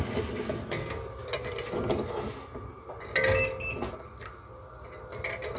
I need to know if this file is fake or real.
real